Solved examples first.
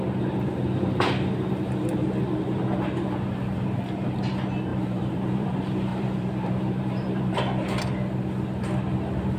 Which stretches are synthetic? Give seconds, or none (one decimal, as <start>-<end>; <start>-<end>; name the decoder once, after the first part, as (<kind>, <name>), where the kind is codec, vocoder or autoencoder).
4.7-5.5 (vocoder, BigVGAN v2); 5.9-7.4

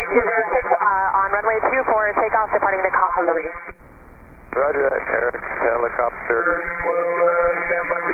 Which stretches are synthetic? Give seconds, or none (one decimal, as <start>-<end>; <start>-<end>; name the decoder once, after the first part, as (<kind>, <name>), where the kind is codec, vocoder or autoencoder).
0.0-0.9 (vocoder, BigVGAN v2); 3.0-3.8; 6.4-8.1

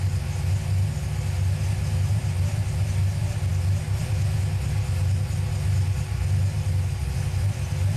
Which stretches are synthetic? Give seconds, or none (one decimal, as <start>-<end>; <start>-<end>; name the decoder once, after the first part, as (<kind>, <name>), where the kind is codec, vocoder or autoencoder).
none

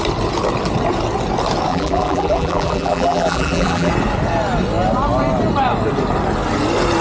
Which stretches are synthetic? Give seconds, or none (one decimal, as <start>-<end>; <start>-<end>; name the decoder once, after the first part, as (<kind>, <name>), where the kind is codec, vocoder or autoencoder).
1.7-3.9 (vocoder, BigVGAN v2)

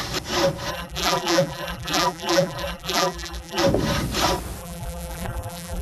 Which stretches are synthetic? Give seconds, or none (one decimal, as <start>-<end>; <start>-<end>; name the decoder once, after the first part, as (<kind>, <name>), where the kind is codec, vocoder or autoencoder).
0.7-3.6 (vocoder, BigVGAN v2); 4.6-5.8

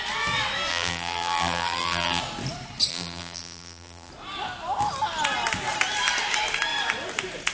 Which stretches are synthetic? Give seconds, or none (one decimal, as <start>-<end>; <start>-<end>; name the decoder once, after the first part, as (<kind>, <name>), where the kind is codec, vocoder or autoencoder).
0.7-2.2 (vocoder, BigVGAN v2); 2.9-4.1

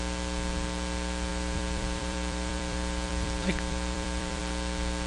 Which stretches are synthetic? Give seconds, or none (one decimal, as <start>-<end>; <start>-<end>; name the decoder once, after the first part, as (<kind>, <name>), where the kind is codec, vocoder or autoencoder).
1.3-4.4 (vocoder, BigVGAN v2)